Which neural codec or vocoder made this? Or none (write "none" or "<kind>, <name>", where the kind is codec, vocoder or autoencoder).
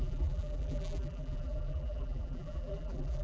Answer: vocoder, BigVGAN v2